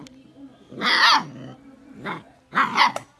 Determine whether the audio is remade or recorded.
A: recorded